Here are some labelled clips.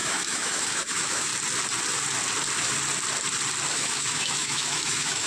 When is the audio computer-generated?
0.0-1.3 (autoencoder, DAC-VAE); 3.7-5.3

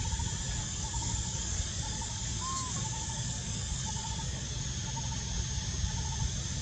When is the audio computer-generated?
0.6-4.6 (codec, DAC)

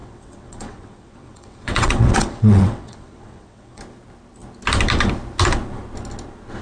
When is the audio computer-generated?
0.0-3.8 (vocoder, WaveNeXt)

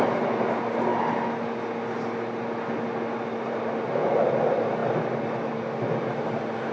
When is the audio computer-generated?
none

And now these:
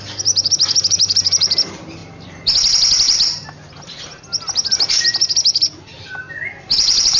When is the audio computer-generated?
none

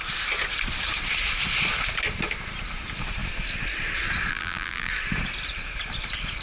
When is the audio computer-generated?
4.3-4.9 (vocoder, BigVGAN v2)

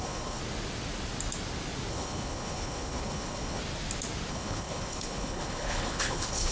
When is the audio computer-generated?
0.0-0.4 (codec, HILCodec); 1.9-3.6; 4.3-6.5